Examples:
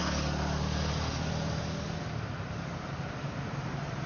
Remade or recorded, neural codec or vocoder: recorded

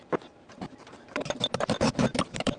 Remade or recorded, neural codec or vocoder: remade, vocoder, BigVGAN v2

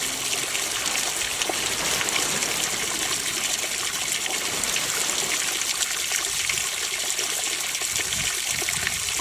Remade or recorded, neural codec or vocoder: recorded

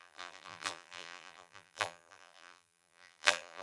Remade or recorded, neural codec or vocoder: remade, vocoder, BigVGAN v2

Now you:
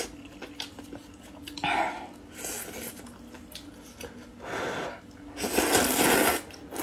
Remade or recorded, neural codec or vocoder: recorded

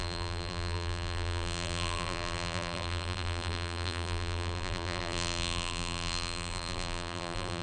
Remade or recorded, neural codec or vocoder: remade, vocoder, BigVGAN v2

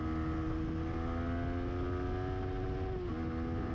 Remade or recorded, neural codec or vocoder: recorded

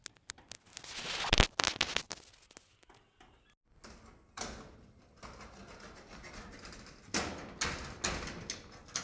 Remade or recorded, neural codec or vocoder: recorded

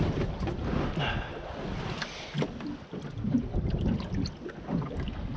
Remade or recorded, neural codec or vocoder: recorded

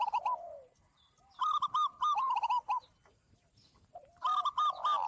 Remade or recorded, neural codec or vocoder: recorded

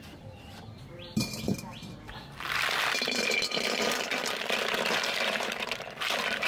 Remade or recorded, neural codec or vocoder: remade, vocoder, BigVGAN v2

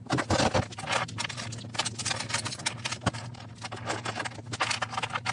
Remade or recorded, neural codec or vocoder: recorded